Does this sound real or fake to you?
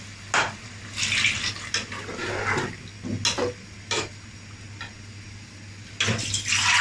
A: real